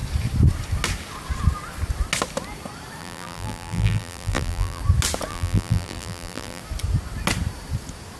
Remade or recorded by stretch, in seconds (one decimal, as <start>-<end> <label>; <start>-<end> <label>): 0.0-3.0 recorded; 3.0-4.8 remade; 4.8-5.3 recorded; 5.3-6.6 remade; 6.6-8.2 recorded